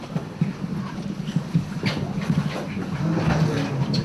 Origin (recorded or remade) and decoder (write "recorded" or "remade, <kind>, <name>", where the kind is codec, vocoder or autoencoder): recorded